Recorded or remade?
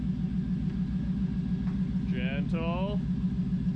recorded